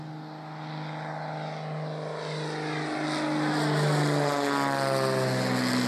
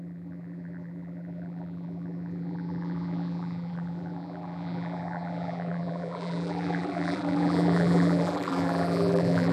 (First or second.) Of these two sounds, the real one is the first